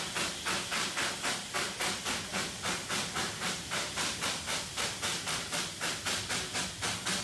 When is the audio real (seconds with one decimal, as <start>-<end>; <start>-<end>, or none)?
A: 0.0-2.3; 6.6-7.2